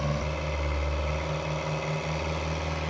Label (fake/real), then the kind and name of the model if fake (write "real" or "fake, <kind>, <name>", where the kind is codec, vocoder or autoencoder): real